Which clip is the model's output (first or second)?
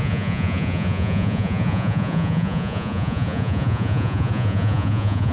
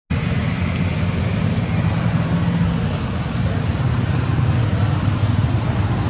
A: first